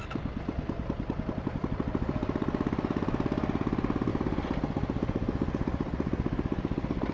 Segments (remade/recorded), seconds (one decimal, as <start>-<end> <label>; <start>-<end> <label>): 0.0-7.1 recorded